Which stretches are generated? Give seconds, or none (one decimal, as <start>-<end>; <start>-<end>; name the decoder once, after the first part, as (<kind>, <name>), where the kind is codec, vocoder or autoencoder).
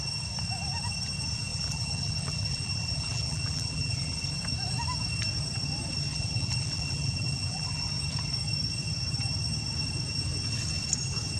1.5-4.2 (vocoder, BigVGAN v2); 6.1-7.9